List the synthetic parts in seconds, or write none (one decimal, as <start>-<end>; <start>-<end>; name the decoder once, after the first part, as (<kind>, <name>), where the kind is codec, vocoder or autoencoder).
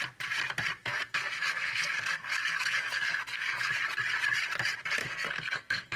0.8-3.7 (codec, SNAC); 5.0-6.0